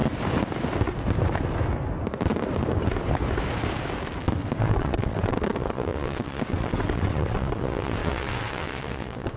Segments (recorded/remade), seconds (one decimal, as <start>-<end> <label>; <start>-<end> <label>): 0.0-4.6 recorded; 4.6-9.4 remade